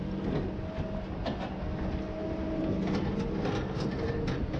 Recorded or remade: recorded